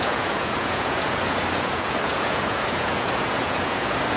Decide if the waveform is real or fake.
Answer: fake